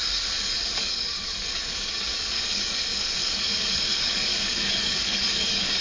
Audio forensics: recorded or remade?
remade